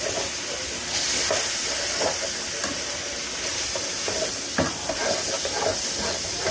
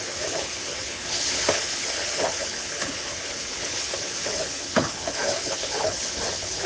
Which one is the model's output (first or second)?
second